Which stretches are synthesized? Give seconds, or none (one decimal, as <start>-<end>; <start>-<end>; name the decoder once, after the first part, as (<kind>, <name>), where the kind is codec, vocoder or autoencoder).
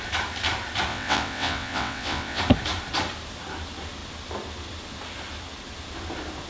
0.9-2.4 (vocoder, WaveNeXt)